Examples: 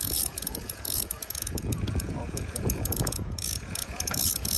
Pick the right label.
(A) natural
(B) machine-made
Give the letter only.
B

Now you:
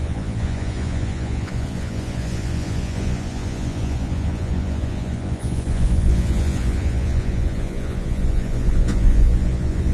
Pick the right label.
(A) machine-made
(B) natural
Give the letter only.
A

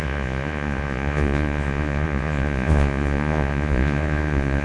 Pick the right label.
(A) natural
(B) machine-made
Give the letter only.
B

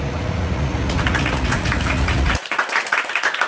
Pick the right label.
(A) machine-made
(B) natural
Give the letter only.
A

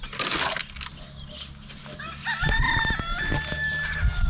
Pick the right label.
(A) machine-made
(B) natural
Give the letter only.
B